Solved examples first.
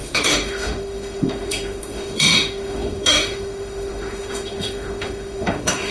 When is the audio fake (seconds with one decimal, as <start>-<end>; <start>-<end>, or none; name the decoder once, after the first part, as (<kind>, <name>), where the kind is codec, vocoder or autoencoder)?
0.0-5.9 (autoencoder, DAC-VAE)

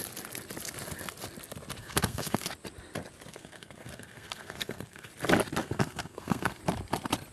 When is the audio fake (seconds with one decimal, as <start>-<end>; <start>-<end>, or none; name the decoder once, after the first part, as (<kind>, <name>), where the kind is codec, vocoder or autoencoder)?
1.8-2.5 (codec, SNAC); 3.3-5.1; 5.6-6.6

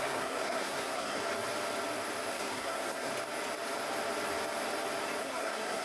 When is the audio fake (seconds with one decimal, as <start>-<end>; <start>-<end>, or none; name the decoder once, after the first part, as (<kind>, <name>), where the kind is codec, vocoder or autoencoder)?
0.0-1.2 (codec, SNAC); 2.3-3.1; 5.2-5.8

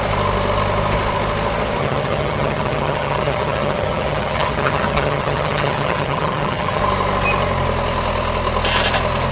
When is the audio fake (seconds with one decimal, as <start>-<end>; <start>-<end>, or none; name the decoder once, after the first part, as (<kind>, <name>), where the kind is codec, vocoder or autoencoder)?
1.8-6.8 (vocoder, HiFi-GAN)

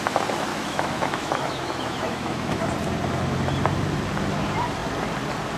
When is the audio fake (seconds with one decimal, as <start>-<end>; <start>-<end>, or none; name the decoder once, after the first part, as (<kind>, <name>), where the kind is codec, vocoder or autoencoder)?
0.5-2.6 (autoencoder, DAC-VAE)

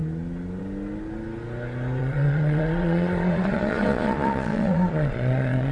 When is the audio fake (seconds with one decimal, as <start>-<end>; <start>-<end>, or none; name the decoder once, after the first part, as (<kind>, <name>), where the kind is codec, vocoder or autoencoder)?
2.0-5.7 (vocoder, Vocos)

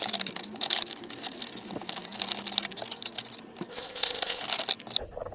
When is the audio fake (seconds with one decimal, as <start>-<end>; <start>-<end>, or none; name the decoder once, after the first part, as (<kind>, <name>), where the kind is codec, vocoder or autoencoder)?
3.7-4.4 (codec, ZipCodec)